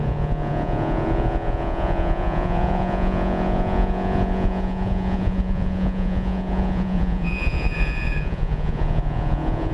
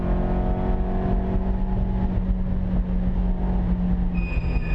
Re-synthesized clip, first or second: first